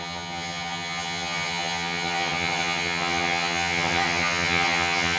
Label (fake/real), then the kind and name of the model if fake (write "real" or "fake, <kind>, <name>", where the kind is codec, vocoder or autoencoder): fake, vocoder, HiFi-GAN